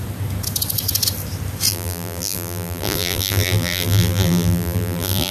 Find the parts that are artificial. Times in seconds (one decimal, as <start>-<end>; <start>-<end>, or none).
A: 1.7-5.3